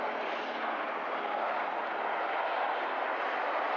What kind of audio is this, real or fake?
real